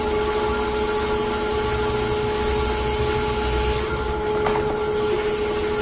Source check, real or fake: real